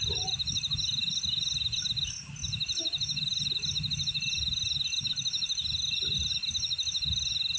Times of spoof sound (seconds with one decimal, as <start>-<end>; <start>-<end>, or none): none